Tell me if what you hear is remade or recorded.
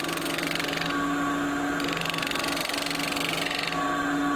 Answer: recorded